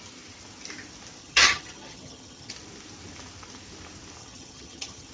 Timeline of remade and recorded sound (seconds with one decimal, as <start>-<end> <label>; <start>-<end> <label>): 0.0-1.2 recorded; 1.2-2.5 remade; 2.5-4.2 recorded; 4.2-5.1 remade